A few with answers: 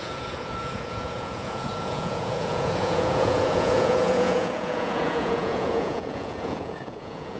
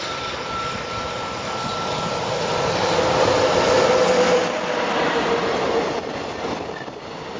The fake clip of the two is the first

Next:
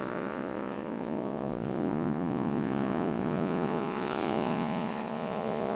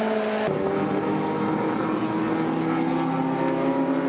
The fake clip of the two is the first